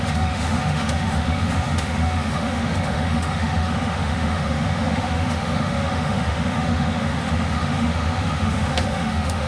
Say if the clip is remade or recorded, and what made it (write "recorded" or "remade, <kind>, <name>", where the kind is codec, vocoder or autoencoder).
remade, autoencoder, DAC-VAE